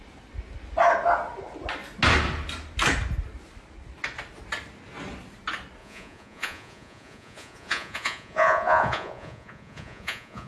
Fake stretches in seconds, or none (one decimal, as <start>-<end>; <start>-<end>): 5.8-10.5